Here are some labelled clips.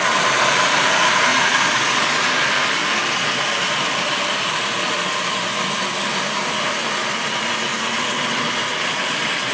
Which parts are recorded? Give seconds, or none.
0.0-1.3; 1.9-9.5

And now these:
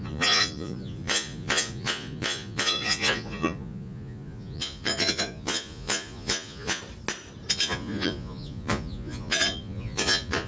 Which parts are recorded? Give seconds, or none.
6.8-7.5

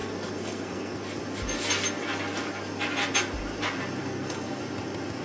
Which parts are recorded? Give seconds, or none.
1.0-4.0; 4.6-5.2

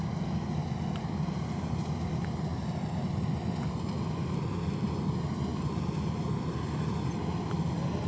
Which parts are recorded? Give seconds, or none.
0.0-8.1

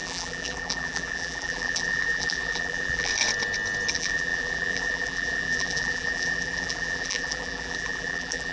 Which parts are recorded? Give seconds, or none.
3.1-3.9

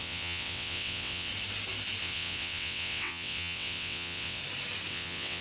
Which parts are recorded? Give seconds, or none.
1.3-2.0; 4.4-4.9

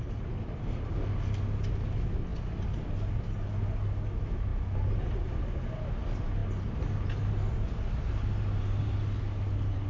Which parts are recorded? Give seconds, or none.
0.0-9.9

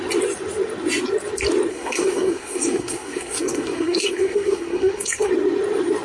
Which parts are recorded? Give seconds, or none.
0.0-1.7; 5.3-6.0